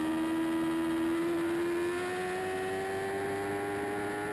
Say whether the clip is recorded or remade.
recorded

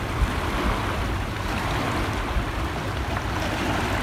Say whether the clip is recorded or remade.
recorded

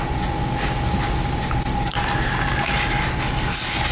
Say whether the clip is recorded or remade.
recorded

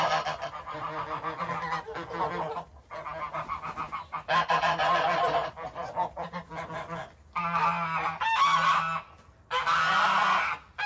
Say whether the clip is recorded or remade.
recorded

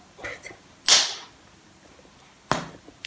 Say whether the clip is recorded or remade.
recorded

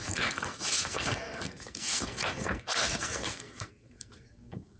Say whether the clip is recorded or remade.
remade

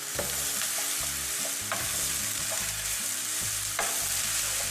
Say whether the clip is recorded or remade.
recorded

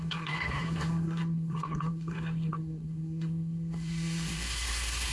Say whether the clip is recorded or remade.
remade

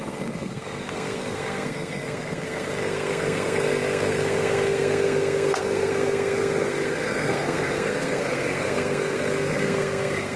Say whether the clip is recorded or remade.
remade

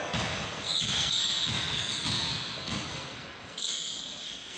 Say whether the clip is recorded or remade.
remade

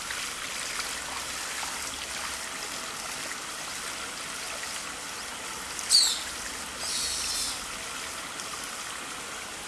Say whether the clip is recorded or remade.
recorded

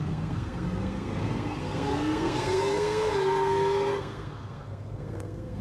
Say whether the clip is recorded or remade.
remade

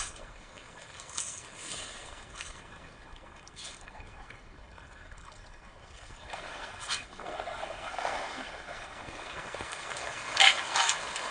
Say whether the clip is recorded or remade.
remade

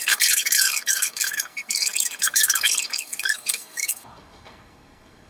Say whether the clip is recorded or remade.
remade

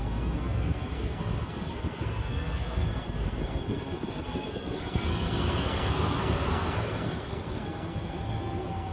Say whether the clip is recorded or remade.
remade